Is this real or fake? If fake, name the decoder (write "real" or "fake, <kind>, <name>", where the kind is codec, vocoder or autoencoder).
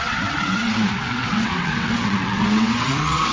fake, vocoder, WaveNeXt